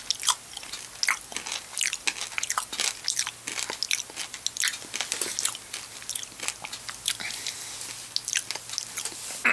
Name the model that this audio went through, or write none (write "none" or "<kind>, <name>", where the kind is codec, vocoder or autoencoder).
none